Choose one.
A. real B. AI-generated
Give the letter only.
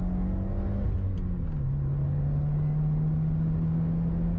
A